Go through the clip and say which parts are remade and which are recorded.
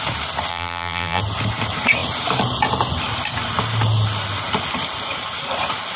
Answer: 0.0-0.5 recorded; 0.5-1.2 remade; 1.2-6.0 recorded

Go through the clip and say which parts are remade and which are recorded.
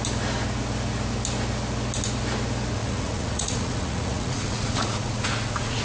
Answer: 0.0-2.8 recorded; 2.8-5.8 remade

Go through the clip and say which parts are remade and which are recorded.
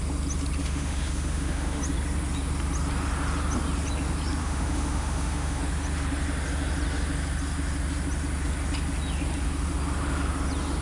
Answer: 0.0-0.6 recorded; 0.6-1.8 remade; 1.8-4.4 recorded; 4.4-5.6 remade; 5.6-10.8 recorded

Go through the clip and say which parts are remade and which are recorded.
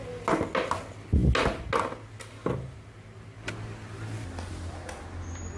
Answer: 0.0-5.6 recorded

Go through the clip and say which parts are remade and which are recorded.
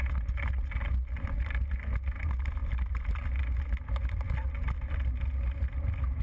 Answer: 0.0-6.2 recorded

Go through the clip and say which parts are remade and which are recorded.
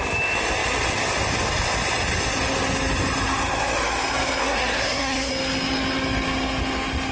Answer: 0.0-4.4 recorded; 4.4-5.3 remade; 5.3-7.1 recorded